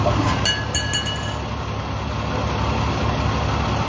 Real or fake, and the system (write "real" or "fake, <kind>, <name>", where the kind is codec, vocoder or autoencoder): real